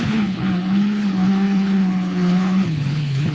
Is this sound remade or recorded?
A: remade